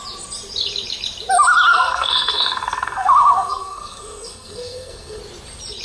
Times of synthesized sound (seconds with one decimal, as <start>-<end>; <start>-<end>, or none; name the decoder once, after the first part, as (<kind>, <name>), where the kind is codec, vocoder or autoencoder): 1.7-5.2 (codec, SNAC)